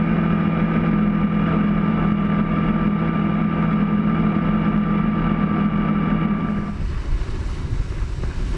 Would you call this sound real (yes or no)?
yes